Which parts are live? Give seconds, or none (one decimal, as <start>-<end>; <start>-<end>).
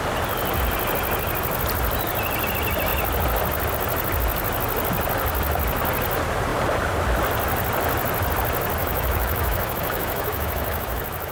0.0-8.8